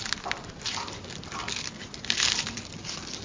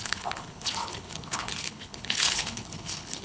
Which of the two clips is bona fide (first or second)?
first